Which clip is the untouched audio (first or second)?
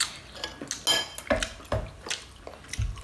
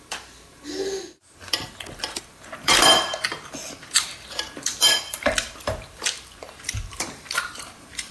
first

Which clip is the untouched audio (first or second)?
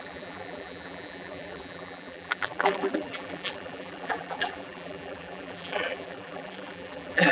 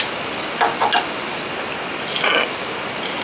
second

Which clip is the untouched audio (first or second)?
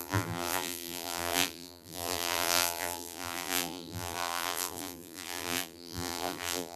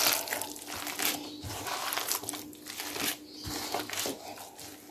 second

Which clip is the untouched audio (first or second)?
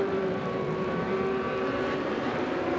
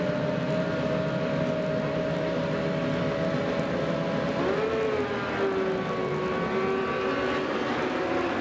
second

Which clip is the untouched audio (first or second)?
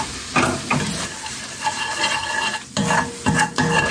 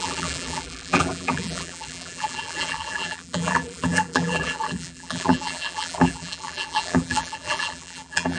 first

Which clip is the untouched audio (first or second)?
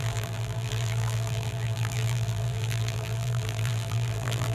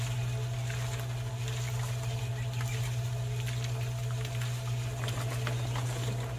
second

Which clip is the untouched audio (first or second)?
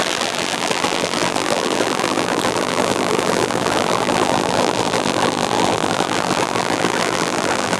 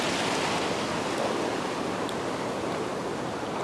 second